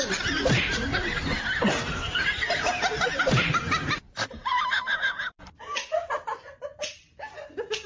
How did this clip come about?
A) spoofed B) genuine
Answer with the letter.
B